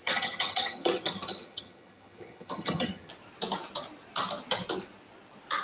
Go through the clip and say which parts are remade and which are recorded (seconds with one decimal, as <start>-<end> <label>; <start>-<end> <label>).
0.0-3.1 remade; 3.1-5.6 recorded

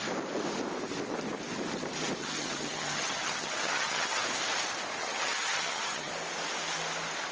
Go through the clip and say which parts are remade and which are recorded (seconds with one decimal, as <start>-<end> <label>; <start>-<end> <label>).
0.0-2.2 recorded; 2.2-4.2 remade; 4.2-5.0 recorded; 5.0-6.1 remade; 6.1-7.3 recorded